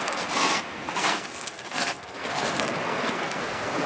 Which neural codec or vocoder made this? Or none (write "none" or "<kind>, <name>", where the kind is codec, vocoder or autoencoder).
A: codec, SNAC